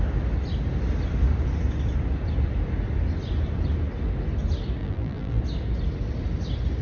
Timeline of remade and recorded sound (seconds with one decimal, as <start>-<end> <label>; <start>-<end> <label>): 0.0-4.8 recorded; 4.8-5.4 remade; 5.4-6.8 recorded